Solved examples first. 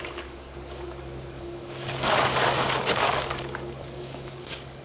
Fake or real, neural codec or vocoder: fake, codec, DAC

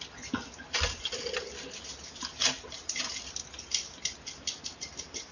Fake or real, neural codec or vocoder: real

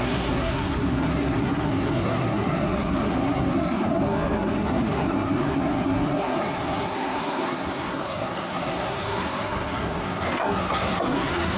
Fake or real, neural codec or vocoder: fake, codec, SNAC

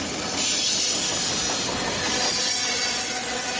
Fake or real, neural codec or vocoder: real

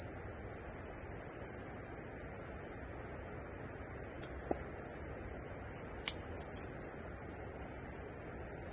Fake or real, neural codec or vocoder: real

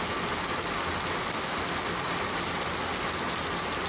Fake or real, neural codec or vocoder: real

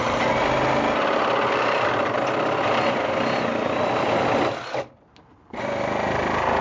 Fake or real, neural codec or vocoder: real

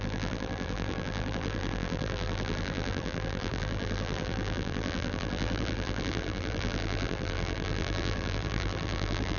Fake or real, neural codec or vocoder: fake, vocoder, BigVGAN v2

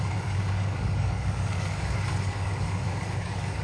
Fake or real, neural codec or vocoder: fake, codec, DAC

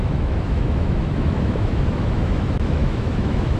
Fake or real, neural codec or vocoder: fake, autoencoder, DAC-VAE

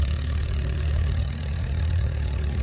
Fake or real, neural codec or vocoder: fake, vocoder, Vocos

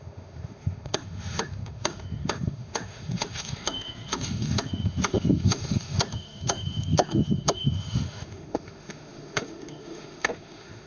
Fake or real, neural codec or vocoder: fake, autoencoder, DAC-VAE